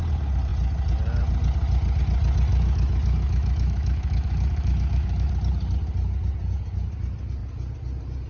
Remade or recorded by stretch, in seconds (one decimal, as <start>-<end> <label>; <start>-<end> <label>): 0.0-2.5 recorded; 2.5-5.3 remade; 5.3-8.3 recorded